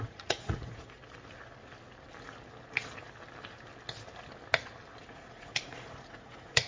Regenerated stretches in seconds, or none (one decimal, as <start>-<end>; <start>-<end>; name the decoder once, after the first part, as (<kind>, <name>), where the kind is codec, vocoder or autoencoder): 0.0-1.0 (vocoder, Vocos); 5.0-6.7